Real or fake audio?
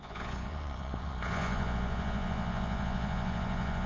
fake